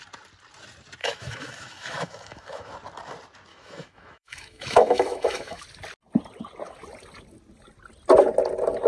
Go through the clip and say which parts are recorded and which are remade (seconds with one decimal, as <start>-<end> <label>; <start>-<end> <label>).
0.0-1.0 recorded; 1.0-2.7 remade; 2.7-3.5 recorded; 3.5-5.6 remade; 5.6-8.9 recorded